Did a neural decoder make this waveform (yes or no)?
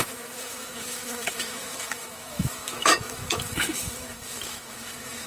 yes